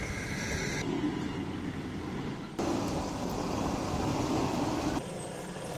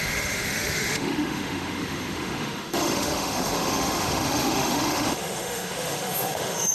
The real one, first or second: first